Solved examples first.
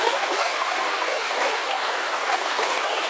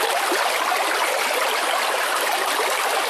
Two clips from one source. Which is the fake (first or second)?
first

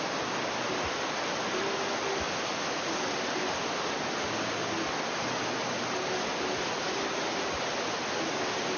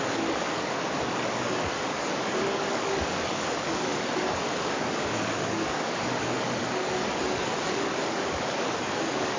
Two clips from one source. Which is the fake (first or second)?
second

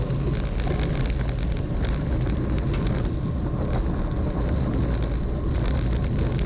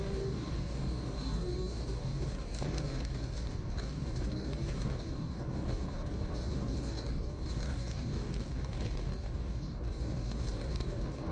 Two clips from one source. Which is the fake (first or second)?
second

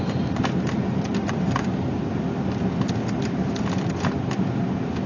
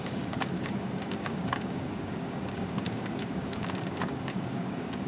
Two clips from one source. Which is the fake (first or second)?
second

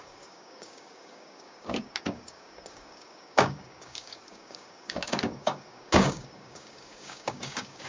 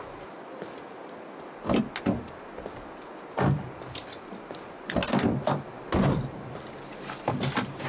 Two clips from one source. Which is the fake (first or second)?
first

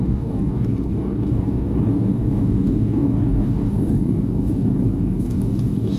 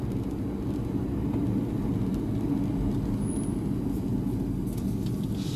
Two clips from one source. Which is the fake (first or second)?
first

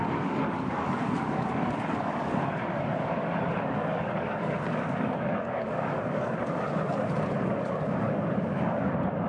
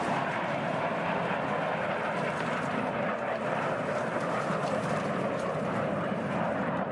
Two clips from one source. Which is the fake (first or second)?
first